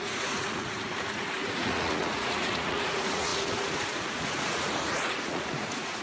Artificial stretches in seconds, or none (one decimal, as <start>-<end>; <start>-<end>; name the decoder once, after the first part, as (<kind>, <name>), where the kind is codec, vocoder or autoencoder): 0.0-6.0 (vocoder, Vocos)